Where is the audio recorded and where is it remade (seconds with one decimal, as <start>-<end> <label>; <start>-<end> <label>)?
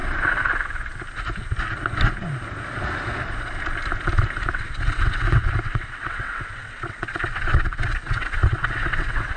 0.0-4.5 recorded; 4.5-9.4 remade